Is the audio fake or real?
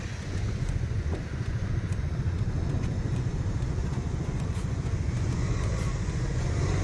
fake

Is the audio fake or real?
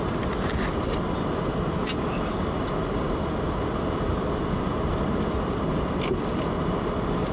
real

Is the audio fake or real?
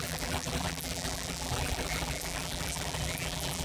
fake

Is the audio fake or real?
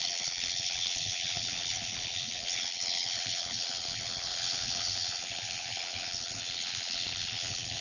fake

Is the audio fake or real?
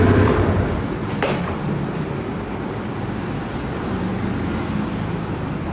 fake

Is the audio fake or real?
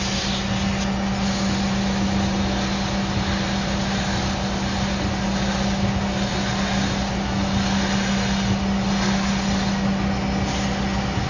real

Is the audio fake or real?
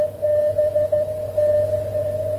real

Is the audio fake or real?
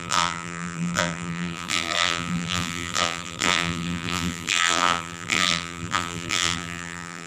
fake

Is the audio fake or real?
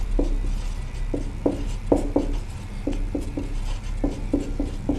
real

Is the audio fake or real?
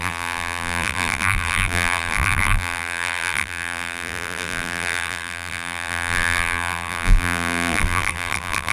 fake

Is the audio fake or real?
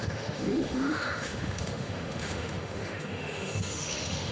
fake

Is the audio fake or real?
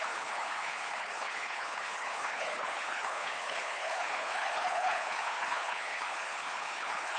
fake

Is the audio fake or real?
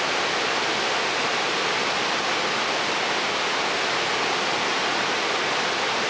real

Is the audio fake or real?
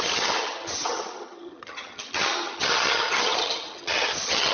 fake